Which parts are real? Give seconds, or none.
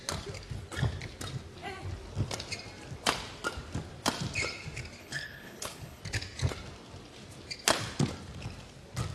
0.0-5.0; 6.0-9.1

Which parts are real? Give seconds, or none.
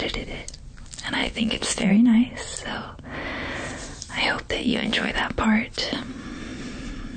0.0-1.2; 1.9-4.6; 5.1-7.2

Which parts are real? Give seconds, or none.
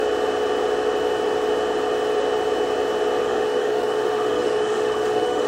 0.0-3.2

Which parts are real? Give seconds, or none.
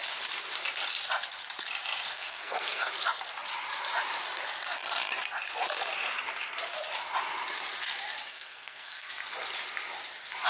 0.0-2.1; 2.9-8.3; 9.1-10.5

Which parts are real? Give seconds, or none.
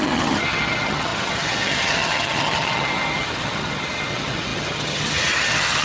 none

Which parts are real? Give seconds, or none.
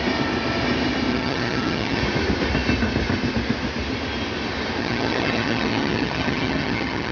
0.0-1.1; 2.0-4.8